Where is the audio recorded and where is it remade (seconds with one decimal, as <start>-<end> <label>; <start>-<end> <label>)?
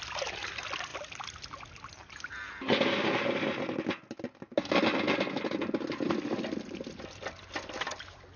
0.0-8.4 recorded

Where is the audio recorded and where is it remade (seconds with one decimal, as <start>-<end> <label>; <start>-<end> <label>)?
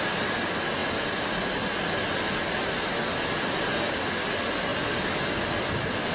0.0-6.1 recorded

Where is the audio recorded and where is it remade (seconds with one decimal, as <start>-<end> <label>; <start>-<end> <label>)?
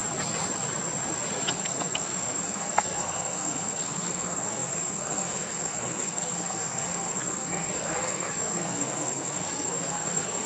0.0-1.5 recorded; 1.5-10.5 remade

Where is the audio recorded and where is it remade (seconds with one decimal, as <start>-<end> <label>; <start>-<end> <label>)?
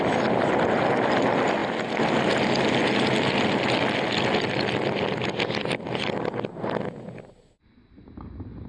0.0-8.7 recorded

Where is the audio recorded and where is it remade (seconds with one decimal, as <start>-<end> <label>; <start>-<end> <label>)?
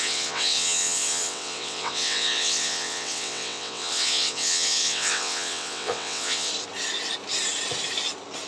0.0-6.5 remade; 6.5-8.5 recorded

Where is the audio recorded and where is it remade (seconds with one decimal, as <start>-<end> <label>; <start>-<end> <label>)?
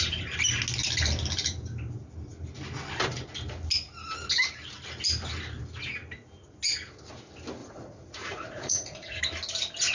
0.0-7.6 recorded; 7.6-9.2 remade; 9.2-9.9 recorded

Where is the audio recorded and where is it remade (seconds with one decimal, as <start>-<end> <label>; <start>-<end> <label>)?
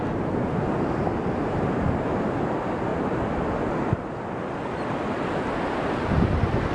0.0-6.7 recorded